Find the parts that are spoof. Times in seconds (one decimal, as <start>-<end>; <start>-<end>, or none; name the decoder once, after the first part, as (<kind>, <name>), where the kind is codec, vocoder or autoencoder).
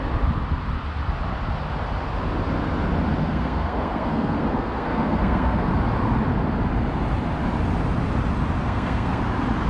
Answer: 3.2-5.7 (codec, SNAC); 8.6-9.2